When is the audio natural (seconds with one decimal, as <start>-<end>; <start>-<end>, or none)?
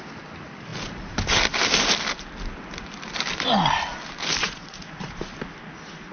0.0-4.4; 5.2-6.1